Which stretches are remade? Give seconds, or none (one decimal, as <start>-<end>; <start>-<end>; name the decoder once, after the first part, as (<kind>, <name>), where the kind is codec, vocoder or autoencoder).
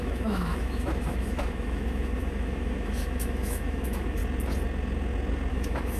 0.0-4.2 (autoencoder, DAC-VAE); 5.5-6.0